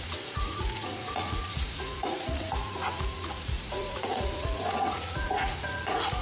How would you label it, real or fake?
fake